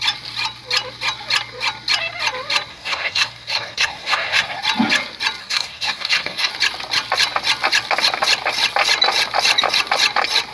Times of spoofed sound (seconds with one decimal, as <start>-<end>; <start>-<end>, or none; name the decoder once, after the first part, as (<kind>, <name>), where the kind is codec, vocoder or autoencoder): 2.7-4.6 (codec, SNAC); 5.4-6.5